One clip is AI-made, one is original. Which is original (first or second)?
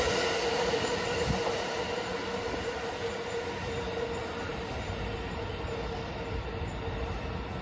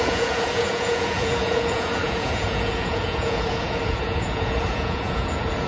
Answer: first